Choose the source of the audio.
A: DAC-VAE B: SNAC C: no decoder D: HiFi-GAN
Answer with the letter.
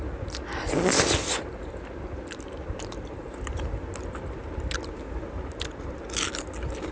C